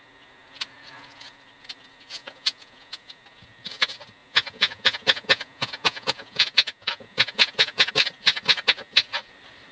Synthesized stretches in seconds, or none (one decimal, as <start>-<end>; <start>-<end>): 2.2-3.2; 4.2-7.9